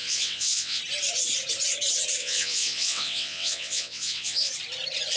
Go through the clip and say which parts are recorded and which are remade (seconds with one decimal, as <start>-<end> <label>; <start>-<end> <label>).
0.0-0.8 remade; 0.8-2.2 recorded; 2.2-4.5 remade; 4.5-5.2 recorded